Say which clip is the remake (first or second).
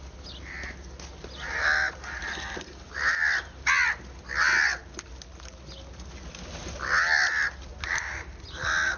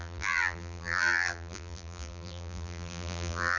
second